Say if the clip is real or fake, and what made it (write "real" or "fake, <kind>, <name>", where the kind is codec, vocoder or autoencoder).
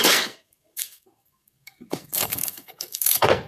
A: fake, codec, SNAC